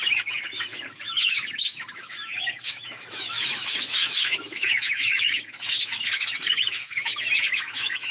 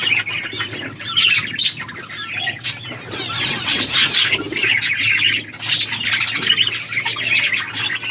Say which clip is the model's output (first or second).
first